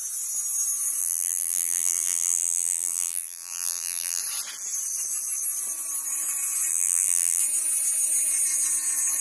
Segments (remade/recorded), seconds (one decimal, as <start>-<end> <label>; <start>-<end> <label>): 0.0-1.0 recorded; 1.0-4.2 remade; 4.2-6.7 recorded; 6.7-7.4 remade; 7.4-9.2 recorded